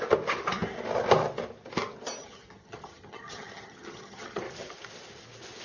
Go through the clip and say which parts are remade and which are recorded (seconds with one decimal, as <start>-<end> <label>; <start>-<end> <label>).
0.0-2.2 recorded; 2.2-4.4 remade; 4.4-5.6 recorded